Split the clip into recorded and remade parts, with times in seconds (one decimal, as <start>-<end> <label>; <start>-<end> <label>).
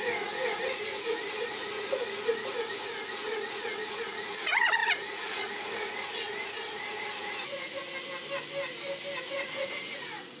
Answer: 0.0-7.8 remade; 7.8-9.2 recorded; 9.2-10.4 remade